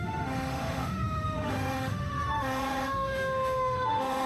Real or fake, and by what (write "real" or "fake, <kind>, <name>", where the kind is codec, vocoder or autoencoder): fake, autoencoder, DAC-VAE